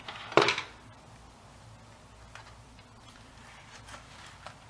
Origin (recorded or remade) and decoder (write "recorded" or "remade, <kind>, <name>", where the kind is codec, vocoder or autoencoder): recorded